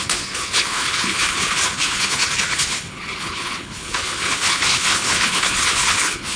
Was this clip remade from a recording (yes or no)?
yes